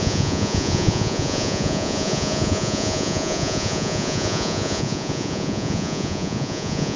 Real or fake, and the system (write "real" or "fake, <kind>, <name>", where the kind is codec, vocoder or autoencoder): fake, vocoder, Vocos